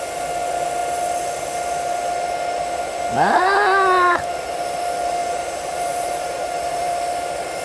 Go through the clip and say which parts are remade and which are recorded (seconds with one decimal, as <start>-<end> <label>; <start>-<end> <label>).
0.0-5.2 recorded; 5.2-7.0 remade; 7.0-7.6 recorded